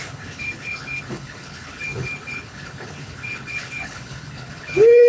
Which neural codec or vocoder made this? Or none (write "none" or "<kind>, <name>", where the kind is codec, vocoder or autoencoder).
codec, HILCodec